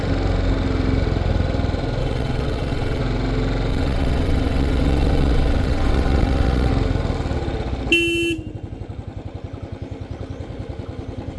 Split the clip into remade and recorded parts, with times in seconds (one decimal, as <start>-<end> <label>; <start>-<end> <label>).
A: 0.0-2.0 recorded; 2.0-3.0 remade; 3.0-3.7 recorded; 3.7-6.7 remade; 6.7-11.4 recorded